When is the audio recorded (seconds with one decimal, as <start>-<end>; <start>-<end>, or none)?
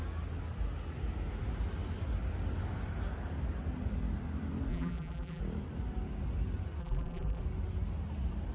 0.0-4.7; 5.4-6.8; 7.4-8.5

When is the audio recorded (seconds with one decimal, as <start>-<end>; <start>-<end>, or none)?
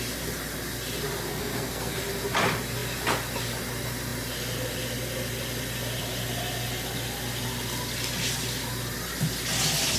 0.0-1.3; 2.0-10.0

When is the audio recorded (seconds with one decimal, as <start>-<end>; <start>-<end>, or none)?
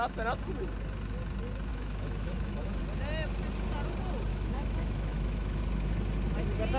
0.0-1.7; 2.8-4.3; 5.6-6.8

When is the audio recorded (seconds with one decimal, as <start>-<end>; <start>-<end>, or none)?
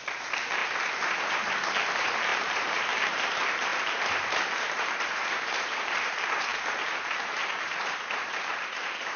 none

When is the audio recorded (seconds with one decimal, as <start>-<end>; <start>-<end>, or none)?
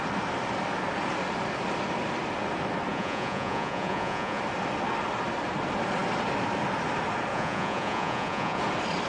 0.0-2.9; 4.4-7.3; 8.6-9.1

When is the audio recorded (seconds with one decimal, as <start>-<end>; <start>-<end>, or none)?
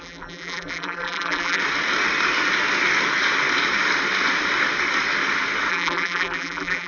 1.6-5.7